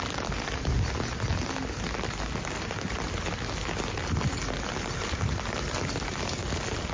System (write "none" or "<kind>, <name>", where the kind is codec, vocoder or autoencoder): none